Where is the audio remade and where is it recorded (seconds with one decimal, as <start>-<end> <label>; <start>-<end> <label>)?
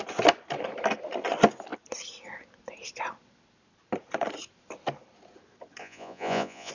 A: 0.0-5.8 recorded; 5.8-6.7 remade